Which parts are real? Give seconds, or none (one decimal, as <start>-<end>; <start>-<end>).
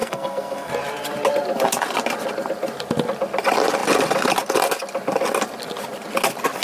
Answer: 0.7-6.6